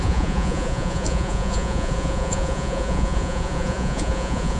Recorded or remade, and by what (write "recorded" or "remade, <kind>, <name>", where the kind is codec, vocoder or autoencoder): remade, vocoder, Vocos